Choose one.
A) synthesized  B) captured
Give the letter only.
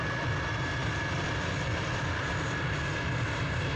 B